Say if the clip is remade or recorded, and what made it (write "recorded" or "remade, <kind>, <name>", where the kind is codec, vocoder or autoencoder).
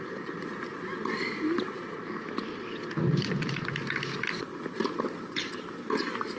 recorded